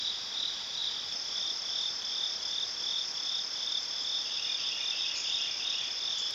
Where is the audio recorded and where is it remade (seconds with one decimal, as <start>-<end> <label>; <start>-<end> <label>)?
0.0-6.3 recorded